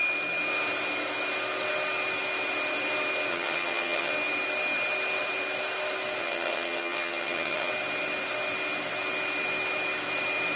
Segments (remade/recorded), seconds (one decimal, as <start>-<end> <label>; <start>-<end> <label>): 0.0-3.3 recorded; 3.3-4.1 remade; 4.1-6.2 recorded; 6.2-7.7 remade; 7.7-10.6 recorded